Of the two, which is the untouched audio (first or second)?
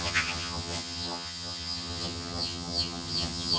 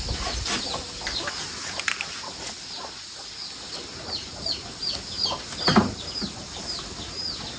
second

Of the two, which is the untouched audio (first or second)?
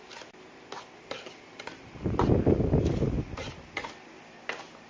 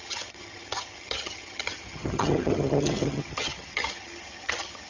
first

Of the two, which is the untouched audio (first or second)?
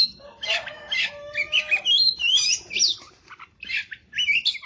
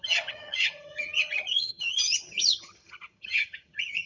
first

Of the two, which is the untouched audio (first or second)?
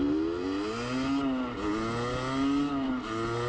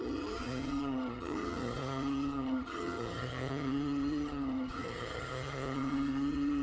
first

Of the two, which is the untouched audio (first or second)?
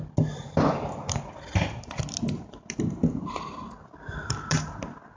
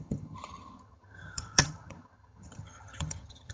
first